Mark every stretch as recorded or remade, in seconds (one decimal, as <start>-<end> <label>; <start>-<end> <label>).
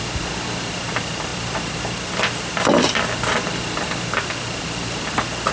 0.0-5.5 recorded